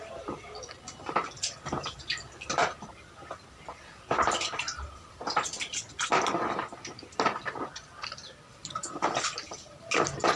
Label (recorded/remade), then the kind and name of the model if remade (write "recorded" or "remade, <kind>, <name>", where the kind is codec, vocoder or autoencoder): recorded